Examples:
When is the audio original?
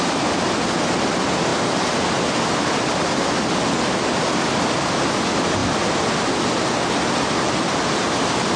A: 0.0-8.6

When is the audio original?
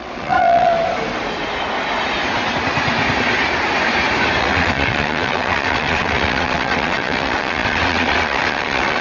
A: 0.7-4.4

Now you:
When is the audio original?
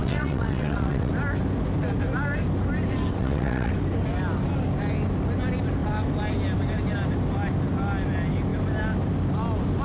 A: 1.1-3.1; 3.7-9.8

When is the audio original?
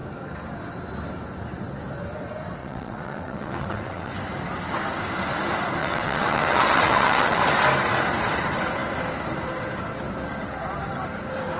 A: 0.0-2.6; 4.1-5.8; 7.4-11.6